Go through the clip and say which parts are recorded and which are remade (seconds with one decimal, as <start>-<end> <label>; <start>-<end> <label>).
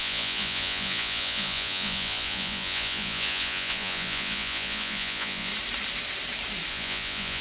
0.0-5.5 remade; 5.5-6.7 recorded; 6.7-7.4 remade